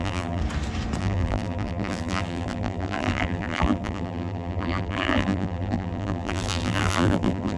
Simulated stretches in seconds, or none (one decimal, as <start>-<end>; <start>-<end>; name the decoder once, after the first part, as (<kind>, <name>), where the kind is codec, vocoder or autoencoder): 0.0-0.4 (vocoder, BigVGAN v2); 1.0-7.6

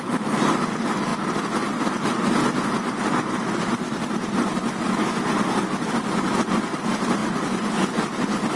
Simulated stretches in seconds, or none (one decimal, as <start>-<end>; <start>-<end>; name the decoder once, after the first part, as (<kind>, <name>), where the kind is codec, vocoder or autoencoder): none

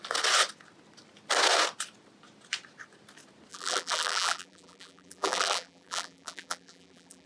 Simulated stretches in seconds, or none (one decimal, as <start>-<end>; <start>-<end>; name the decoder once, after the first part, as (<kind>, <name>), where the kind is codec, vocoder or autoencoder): 3.5-7.3 (vocoder, BigVGAN v2)

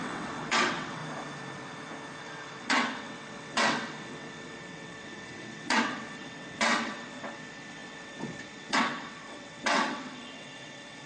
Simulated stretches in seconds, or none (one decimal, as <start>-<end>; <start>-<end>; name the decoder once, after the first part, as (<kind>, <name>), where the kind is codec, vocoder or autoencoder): 0.0-1.0 (vocoder, WaveNeXt); 2.2-11.1

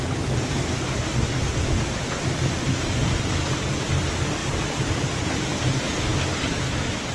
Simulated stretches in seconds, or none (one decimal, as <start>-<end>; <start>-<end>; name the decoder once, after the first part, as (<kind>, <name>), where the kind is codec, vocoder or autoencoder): 2.6-3.3 (vocoder, BigVGAN v2)

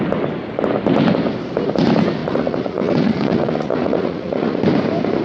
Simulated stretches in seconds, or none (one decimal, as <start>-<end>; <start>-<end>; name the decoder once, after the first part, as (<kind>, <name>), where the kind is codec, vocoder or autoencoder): 2.2-4.6 (vocoder, Vocos)